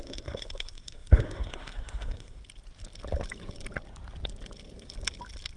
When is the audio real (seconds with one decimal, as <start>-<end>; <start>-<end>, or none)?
2.4-5.6